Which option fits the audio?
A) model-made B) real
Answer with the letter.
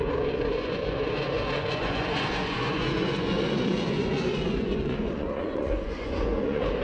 A